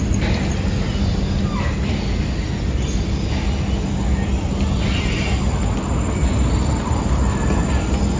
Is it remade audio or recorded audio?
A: recorded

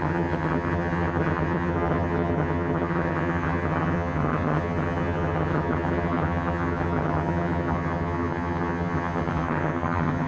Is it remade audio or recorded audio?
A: remade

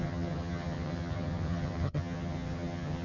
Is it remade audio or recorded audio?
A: remade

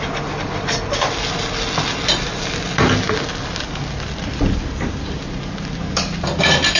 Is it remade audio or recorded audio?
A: recorded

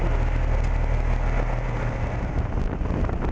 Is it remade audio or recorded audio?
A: recorded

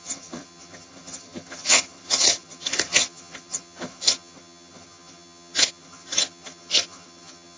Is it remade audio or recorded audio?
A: remade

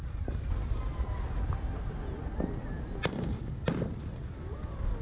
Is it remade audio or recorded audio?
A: recorded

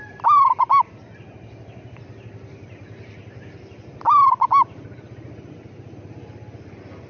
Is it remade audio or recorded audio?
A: recorded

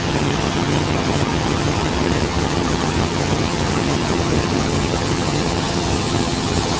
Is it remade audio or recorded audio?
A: remade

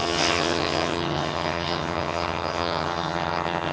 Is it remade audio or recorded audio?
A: remade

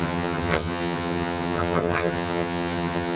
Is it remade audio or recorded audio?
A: remade